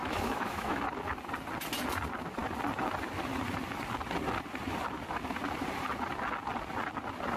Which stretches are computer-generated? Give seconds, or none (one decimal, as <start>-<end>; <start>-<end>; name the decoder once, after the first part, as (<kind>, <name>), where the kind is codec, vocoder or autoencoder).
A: 0.0-0.8 (autoencoder, DAC-VAE)